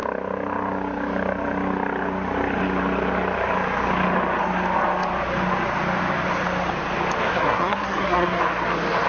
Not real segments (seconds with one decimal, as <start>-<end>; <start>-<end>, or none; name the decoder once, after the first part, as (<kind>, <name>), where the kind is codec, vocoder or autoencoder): 7.3-8.4 (codec, SNAC)